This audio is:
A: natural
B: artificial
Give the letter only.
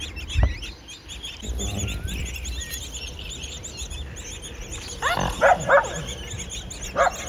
A